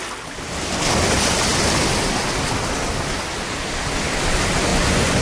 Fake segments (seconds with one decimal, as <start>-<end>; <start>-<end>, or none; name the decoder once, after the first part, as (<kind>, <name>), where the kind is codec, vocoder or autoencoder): 4.7-5.2 (vocoder, Vocos)